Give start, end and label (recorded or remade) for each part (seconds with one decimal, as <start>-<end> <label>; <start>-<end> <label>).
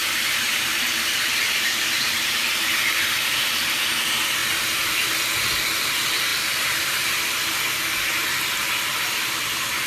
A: 0.0-3.9 remade; 3.9-6.3 recorded; 6.3-7.1 remade; 7.1-9.9 recorded